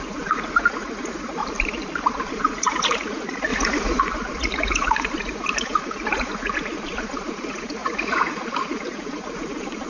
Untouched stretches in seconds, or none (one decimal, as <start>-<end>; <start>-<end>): 1.4-2.3